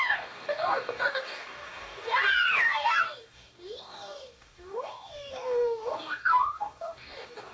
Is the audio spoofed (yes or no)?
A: yes